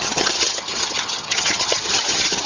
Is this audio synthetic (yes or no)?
yes